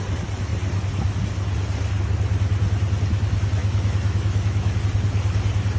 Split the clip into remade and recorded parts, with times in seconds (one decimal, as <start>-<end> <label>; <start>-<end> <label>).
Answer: 0.0-3.6 recorded; 3.6-4.8 remade; 4.8-5.8 recorded